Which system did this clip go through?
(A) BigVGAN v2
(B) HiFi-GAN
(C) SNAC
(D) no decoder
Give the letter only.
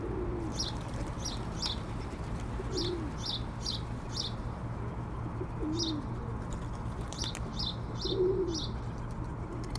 D